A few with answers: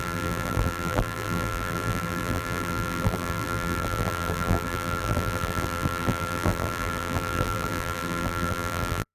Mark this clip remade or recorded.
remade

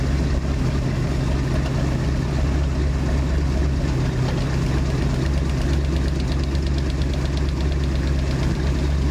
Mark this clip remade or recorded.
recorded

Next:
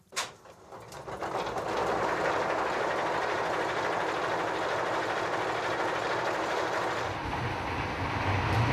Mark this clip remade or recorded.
recorded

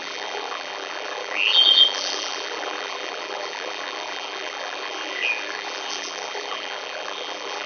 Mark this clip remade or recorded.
remade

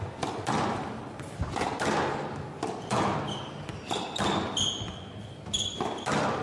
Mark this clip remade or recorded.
recorded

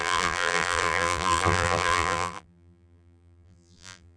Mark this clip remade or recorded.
remade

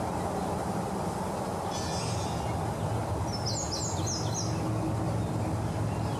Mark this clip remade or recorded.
recorded